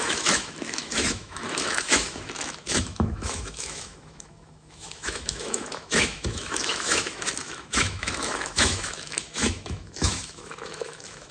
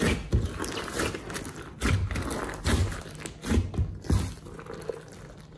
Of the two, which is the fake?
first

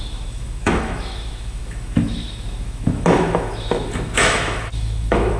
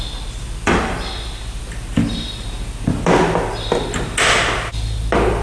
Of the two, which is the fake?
first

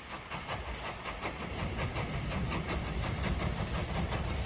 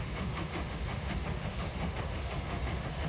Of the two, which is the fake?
second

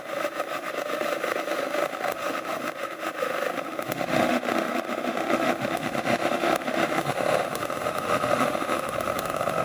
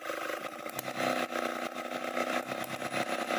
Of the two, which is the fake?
first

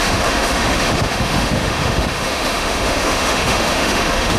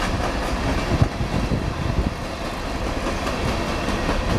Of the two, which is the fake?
first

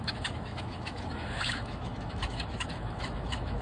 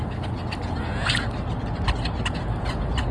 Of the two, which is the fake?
first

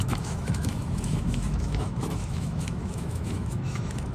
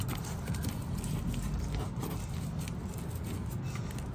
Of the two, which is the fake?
first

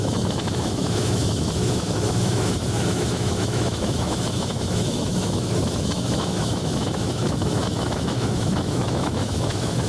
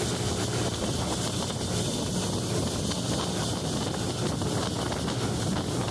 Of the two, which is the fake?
first